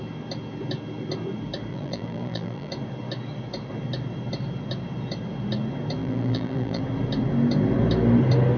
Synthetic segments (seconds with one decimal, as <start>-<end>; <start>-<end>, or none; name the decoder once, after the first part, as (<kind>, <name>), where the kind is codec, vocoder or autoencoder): 1.7-2.7 (vocoder, BigVGAN v2); 6.0-6.8